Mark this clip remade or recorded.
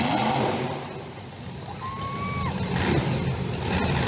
recorded